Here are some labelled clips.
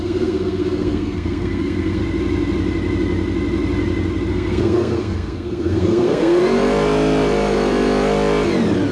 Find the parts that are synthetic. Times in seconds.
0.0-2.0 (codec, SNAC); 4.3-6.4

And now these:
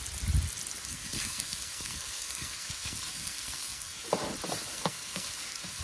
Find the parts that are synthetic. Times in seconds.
0.8-4.1 (codec, SNAC); 4.7-5.8

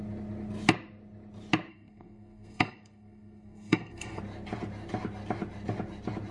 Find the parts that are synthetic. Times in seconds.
1.7-4.2 (codec, SNAC)

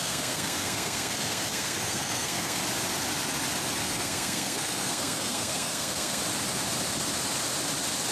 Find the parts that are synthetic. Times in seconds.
0.0-2.6 (codec, SNAC); 3.8-6.2

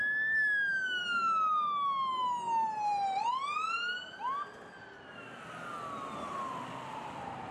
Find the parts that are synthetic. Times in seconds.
none

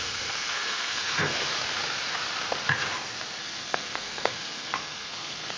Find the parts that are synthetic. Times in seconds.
0.0-1.5 (codec, SNAC); 3.4-5.6